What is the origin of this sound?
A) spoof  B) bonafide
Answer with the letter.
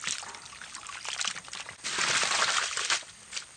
A